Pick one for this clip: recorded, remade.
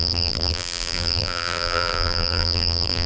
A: remade